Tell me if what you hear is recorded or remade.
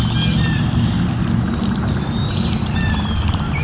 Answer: recorded